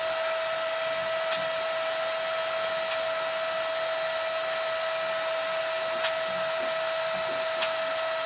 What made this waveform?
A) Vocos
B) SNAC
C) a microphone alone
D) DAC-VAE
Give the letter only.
C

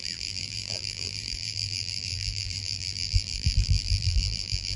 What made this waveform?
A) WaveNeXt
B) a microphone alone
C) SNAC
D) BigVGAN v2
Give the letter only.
D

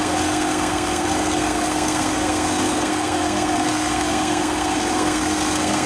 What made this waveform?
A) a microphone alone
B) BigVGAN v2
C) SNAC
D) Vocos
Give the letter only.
C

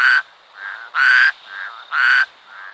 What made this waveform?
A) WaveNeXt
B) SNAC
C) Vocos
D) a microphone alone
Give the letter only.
D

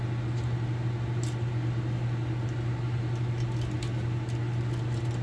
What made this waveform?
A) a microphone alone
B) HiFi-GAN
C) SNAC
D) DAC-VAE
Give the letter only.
A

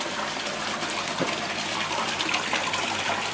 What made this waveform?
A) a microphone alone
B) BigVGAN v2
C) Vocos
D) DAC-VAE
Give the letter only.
A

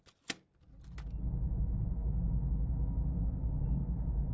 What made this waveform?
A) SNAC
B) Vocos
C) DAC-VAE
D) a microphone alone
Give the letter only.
D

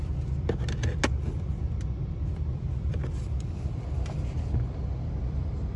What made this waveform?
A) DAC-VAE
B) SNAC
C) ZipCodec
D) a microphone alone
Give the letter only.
D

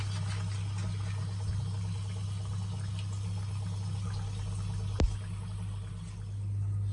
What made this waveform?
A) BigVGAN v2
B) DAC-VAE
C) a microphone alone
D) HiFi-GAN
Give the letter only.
C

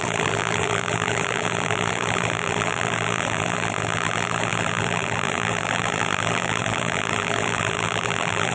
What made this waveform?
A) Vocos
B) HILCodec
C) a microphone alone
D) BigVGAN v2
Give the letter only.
D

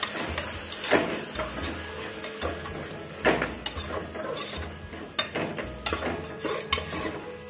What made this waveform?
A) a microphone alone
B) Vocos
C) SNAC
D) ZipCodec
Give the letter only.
A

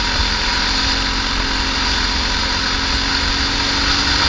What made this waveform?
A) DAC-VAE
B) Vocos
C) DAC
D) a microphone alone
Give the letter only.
D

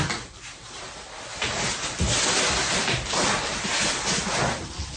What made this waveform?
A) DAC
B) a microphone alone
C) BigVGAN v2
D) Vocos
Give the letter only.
B